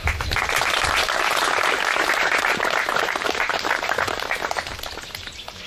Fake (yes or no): yes